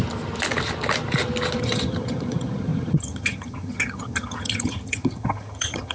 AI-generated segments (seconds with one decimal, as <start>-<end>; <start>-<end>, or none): 1.6-5.9